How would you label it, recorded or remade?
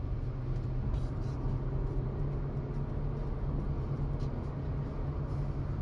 recorded